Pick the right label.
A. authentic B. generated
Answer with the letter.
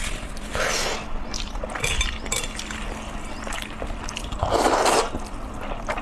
A